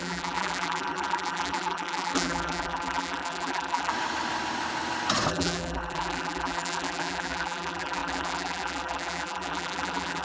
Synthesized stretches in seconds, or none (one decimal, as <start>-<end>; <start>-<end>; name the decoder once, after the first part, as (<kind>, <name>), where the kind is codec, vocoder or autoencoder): 0.0-3.9 (vocoder, BigVGAN v2); 5.3-10.2